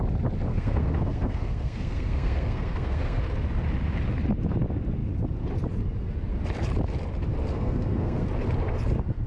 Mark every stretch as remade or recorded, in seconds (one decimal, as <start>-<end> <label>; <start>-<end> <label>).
0.0-0.5 recorded; 0.5-3.2 remade; 3.2-7.5 recorded; 7.5-8.3 remade; 8.3-9.3 recorded